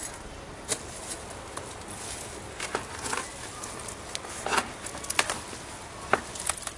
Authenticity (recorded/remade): recorded